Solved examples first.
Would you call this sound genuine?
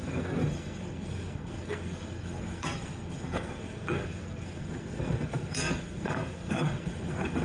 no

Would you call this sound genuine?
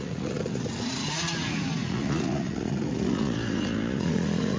no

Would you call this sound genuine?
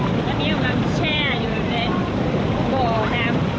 no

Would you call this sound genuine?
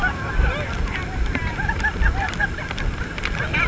yes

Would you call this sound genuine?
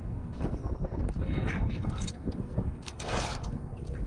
no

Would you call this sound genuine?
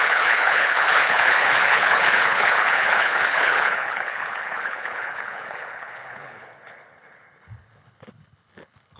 no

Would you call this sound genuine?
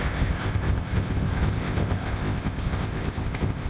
no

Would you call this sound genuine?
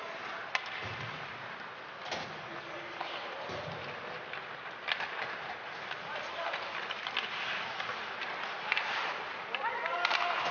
yes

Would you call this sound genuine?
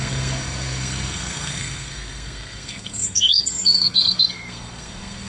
no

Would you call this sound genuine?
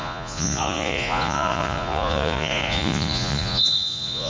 no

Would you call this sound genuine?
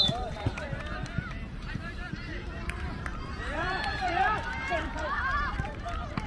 no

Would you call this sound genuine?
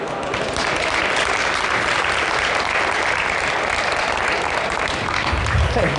yes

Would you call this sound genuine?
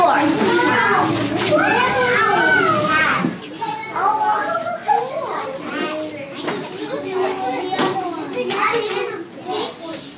yes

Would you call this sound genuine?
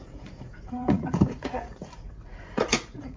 no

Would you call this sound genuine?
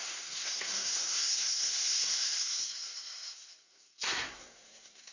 no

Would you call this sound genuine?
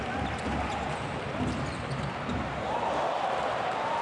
no